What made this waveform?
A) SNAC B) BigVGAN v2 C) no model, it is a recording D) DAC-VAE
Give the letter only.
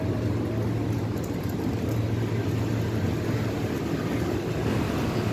C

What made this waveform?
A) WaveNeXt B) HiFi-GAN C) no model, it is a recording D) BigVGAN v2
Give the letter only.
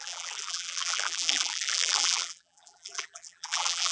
D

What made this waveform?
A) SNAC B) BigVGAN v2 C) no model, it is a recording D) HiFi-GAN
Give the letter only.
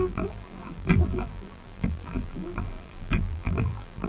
B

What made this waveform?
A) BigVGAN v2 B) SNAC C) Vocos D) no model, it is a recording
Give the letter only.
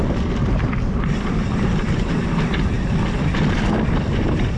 A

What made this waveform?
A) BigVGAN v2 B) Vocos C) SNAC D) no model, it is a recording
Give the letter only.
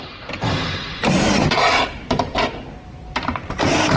A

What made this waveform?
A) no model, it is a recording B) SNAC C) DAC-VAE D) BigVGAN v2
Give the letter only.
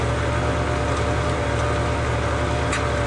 A